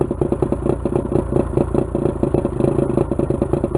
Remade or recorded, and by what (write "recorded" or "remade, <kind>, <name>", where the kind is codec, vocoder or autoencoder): recorded